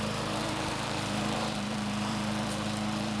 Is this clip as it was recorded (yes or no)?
no